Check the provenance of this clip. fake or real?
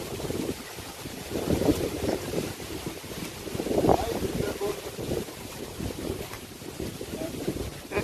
fake